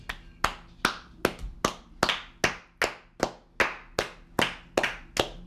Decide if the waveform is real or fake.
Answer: real